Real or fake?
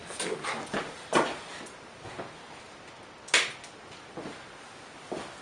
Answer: real